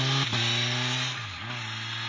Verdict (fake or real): real